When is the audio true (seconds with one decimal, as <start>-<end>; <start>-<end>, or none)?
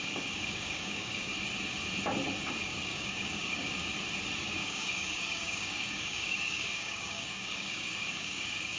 1.3-2.6; 3.8-4.4